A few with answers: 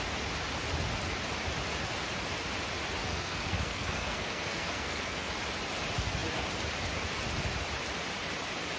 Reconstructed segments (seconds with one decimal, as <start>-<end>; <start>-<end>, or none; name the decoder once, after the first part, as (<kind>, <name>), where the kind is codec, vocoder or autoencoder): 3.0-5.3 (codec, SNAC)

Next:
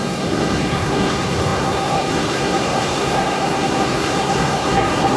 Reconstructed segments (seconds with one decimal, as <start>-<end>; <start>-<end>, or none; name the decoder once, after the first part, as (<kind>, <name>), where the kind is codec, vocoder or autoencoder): 0.0-5.2 (codec, SNAC)

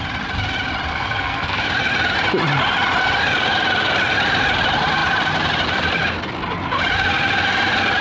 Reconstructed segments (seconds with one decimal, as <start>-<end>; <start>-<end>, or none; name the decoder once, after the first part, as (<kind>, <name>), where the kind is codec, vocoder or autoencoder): 0.9-1.6 (codec, SNAC)

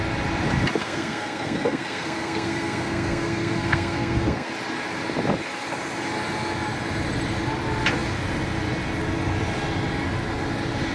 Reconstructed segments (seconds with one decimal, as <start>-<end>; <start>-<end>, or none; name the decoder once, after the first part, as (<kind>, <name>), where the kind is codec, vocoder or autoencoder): 0.8-4.5 (codec, SNAC)

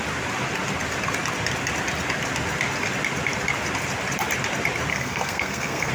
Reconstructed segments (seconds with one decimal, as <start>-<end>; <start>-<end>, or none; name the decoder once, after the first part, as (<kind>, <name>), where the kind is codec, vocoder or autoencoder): 4.9-5.9 (codec, SNAC)

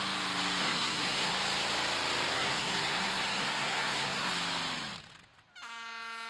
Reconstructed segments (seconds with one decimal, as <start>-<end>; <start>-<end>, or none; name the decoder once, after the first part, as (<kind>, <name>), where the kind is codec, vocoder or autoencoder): 0.6-1.3 (codec, SNAC); 2.3-4.3

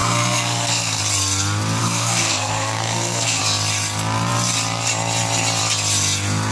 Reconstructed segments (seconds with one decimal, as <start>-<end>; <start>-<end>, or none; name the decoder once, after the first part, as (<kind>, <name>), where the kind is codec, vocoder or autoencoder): 0.0-1.0 (codec, SNAC); 1.8-3.4